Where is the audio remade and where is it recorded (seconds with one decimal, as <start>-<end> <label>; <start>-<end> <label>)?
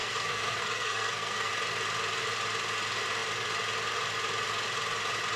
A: 0.0-1.5 remade; 1.5-5.4 recorded